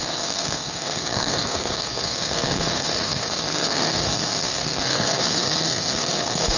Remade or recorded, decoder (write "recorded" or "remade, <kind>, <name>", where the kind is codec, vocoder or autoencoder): remade, codec, SNAC